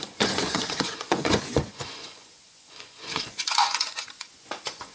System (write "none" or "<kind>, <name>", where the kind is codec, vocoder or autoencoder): vocoder, Vocos